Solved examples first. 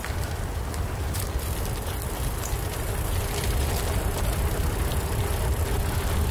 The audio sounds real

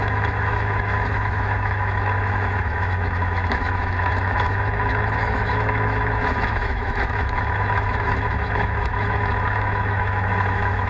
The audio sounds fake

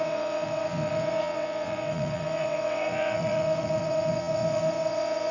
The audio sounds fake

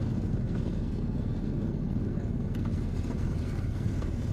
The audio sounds fake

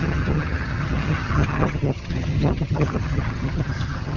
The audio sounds fake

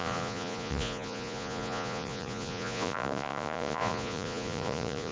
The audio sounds fake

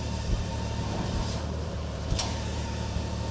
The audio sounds fake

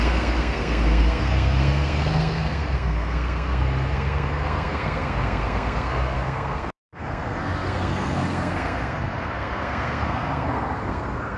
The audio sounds fake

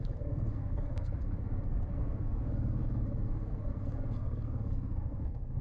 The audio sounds fake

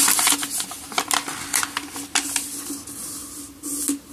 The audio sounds real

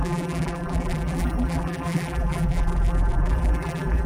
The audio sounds fake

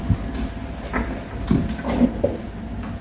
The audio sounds real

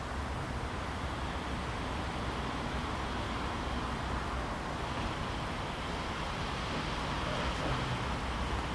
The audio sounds real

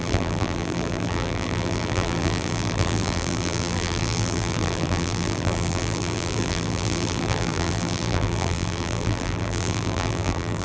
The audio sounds fake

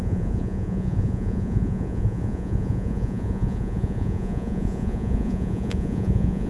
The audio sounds fake